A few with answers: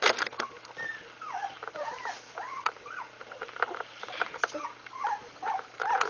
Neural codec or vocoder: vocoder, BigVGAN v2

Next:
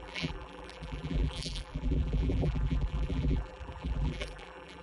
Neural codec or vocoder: vocoder, BigVGAN v2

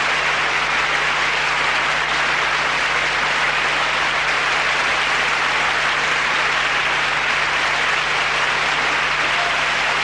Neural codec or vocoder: none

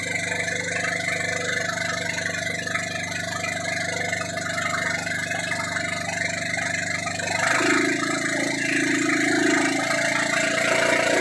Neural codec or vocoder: none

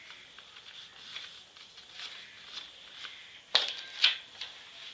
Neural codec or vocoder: none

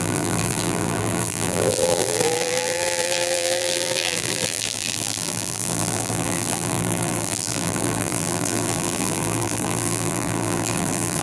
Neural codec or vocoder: vocoder, BigVGAN v2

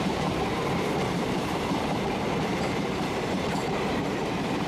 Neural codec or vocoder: vocoder, BigVGAN v2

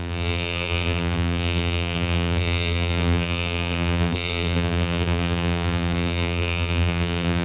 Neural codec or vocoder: vocoder, BigVGAN v2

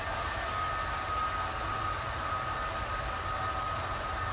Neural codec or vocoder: none